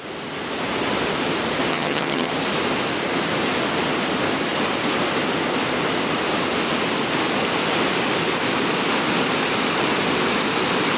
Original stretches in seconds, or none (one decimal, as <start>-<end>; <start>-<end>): 0.0-1.7; 2.3-11.0

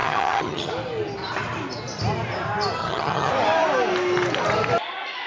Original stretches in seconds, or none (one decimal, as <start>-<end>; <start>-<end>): 0.7-2.8; 3.3-5.3

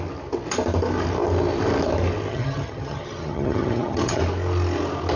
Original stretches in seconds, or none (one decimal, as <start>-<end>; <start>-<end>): 0.0-2.3; 4.2-5.2